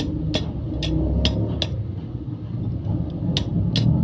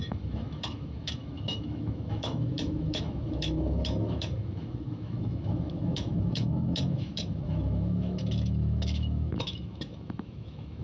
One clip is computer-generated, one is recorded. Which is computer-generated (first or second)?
second